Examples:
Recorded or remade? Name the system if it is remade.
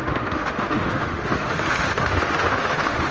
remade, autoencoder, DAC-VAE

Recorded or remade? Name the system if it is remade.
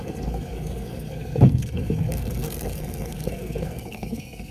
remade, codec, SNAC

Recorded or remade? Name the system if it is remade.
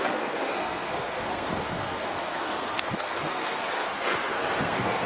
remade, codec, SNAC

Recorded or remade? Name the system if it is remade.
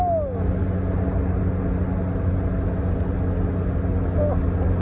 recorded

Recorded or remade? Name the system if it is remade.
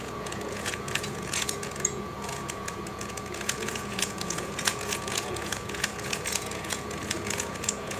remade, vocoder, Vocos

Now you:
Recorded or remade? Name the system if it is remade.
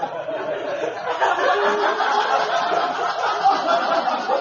recorded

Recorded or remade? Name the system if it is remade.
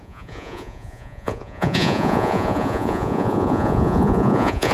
remade, vocoder, Vocos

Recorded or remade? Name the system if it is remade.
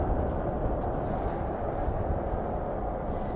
recorded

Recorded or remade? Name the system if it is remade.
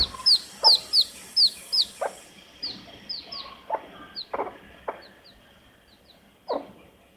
recorded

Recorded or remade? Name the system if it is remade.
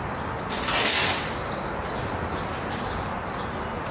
recorded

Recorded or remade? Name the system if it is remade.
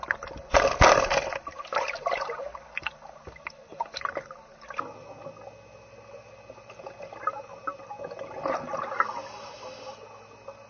recorded